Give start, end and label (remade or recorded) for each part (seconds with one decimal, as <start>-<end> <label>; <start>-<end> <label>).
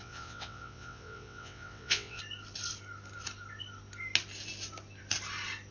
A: 0.0-2.2 remade; 2.2-5.7 recorded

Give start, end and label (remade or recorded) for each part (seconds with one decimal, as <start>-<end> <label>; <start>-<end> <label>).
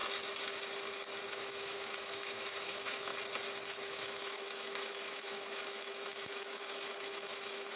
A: 0.0-1.3 recorded; 1.3-3.1 remade; 3.1-3.7 recorded; 3.7-7.8 remade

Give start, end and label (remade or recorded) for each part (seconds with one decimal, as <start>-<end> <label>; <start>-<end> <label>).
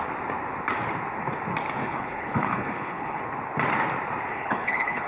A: 0.0-1.8 recorded; 1.8-3.2 remade; 3.2-4.3 recorded; 4.3-5.1 remade